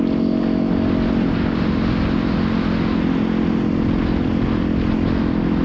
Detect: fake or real real